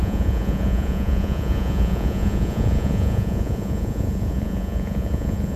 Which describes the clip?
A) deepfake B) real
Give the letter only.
A